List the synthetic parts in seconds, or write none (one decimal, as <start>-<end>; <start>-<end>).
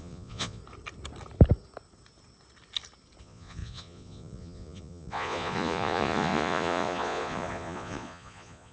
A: 0.0-0.6; 3.2-8.7